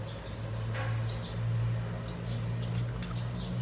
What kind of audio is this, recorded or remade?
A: recorded